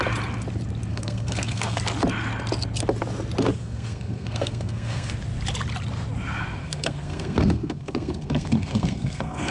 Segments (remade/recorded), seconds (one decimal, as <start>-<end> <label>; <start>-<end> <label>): 0.0-0.9 recorded; 0.9-1.8 remade; 1.8-3.6 recorded; 3.6-5.1 remade; 5.1-6.6 recorded; 6.6-9.5 remade